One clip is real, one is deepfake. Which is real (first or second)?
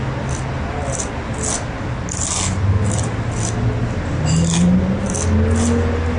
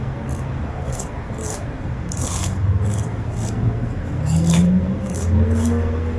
first